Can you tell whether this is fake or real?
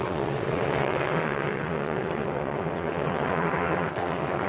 fake